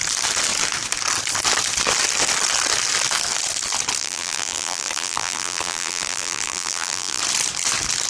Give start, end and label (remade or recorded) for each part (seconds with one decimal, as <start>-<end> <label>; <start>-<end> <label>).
0.0-4.0 recorded; 4.0-7.2 remade; 7.2-8.1 recorded